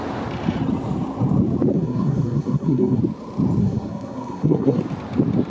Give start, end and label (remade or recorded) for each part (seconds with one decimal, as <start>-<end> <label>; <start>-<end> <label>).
0.0-1.7 recorded; 1.7-3.0 remade; 3.0-3.6 recorded; 3.6-4.8 remade; 4.8-5.5 recorded